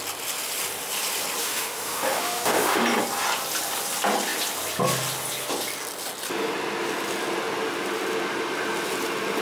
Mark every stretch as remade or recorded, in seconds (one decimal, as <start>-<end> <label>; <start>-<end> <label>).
0.0-1.4 recorded; 1.4-2.8 remade; 2.8-9.4 recorded